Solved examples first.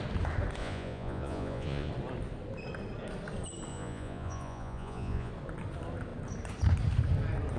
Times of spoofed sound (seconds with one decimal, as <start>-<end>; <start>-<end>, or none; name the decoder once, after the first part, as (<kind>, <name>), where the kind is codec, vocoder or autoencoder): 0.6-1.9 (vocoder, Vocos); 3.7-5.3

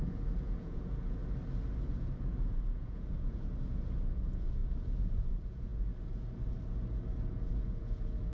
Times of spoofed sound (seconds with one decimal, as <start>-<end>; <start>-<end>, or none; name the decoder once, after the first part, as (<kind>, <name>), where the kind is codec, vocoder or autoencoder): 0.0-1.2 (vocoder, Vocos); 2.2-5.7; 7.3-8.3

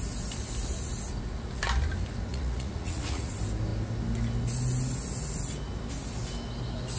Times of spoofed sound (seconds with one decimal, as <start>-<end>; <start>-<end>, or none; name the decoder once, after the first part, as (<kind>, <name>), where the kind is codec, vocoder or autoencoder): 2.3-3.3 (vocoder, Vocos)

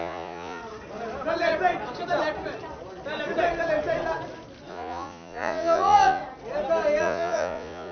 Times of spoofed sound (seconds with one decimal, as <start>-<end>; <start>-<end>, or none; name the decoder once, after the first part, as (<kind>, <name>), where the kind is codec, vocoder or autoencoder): 0.0-0.6 (vocoder, Vocos); 4.7-6.2; 7.0-7.9

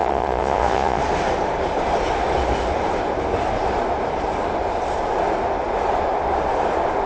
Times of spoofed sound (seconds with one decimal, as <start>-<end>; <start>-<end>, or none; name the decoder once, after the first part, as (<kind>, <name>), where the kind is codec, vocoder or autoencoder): 0.0-1.0 (vocoder, Vocos)